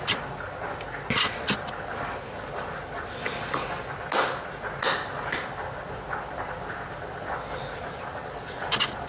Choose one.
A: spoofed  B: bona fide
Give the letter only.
B